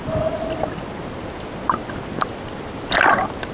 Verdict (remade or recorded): recorded